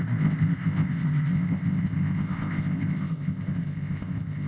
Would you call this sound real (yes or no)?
no